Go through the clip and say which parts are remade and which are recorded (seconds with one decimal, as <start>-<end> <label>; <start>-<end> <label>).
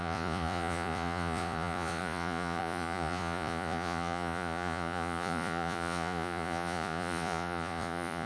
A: 0.0-8.3 remade